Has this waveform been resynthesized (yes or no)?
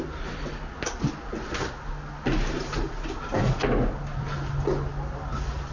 no